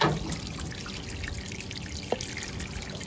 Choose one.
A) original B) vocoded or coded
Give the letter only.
A